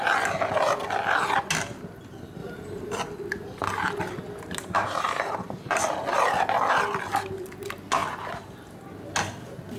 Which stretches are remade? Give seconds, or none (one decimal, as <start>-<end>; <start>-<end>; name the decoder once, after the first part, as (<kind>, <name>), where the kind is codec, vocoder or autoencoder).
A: 2.4-3.0 (vocoder, BigVGAN v2); 4.2-5.8